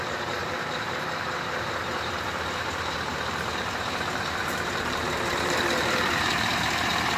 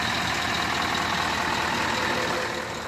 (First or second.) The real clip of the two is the second